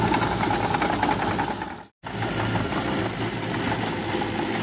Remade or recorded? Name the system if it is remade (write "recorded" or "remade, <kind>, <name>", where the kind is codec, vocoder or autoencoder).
recorded